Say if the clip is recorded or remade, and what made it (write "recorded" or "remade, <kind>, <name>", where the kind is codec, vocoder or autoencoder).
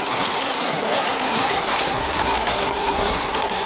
remade, codec, SNAC